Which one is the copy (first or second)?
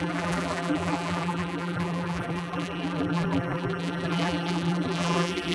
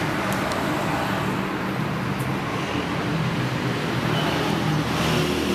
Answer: first